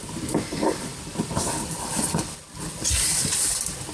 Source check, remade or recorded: recorded